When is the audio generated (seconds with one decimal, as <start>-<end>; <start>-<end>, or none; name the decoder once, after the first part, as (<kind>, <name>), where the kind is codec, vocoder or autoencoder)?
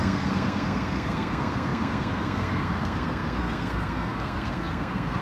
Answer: 0.0-5.2 (codec, SNAC)